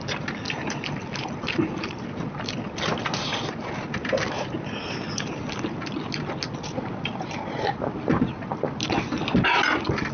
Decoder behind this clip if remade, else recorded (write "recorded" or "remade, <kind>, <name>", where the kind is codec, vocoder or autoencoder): recorded